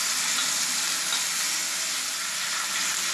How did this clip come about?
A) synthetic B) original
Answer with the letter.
B